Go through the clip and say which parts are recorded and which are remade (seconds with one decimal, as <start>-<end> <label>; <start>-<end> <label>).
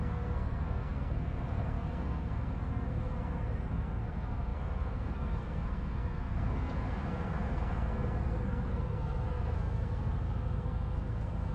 0.0-11.5 remade